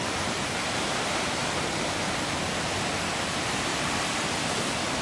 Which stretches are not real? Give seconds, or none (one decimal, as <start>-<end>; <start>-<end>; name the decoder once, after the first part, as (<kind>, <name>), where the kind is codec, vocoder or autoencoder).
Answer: 0.0-1.9 (vocoder, BigVGAN v2); 3.7-4.3